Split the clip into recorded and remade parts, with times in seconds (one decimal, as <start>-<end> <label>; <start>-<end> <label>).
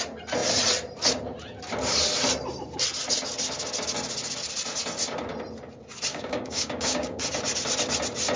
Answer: 0.0-6.1 recorded; 6.1-7.2 remade; 7.2-8.4 recorded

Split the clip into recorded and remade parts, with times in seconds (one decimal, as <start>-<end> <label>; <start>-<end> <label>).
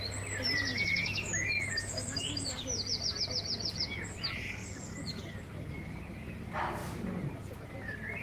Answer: 0.0-0.7 recorded; 0.7-2.6 remade; 2.6-8.2 recorded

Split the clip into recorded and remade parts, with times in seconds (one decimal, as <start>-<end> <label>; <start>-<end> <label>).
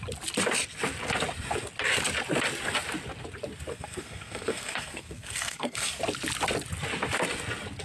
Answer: 0.0-3.7 recorded; 3.7-6.0 remade; 6.0-7.8 recorded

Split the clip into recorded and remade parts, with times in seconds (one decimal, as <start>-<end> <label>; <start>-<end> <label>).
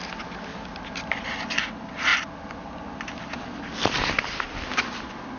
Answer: 0.0-5.4 recorded